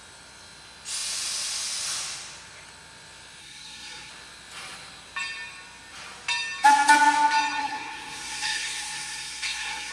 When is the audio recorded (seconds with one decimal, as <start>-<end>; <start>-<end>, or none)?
0.0-3.4; 4.1-7.6